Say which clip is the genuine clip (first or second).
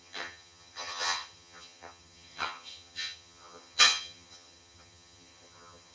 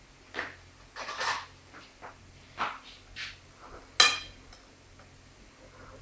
second